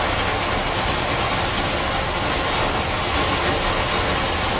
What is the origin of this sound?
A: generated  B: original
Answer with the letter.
B